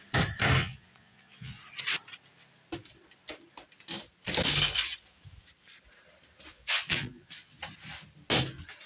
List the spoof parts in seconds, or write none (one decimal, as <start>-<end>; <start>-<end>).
0.6-1.6; 6.5-7.6